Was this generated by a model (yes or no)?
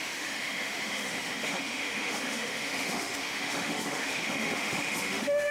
yes